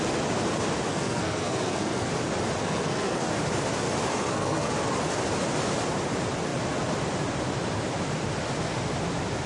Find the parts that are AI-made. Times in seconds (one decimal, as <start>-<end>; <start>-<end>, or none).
0.9-2.1; 2.6-3.3; 4.1-4.7